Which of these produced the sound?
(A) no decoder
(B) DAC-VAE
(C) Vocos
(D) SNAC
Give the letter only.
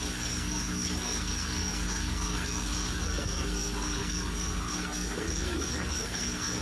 D